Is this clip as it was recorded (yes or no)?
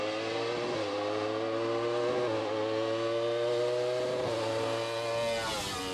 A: yes